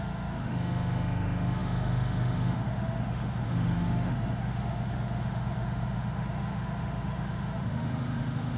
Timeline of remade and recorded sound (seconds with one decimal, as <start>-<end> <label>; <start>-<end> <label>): 0.0-8.6 remade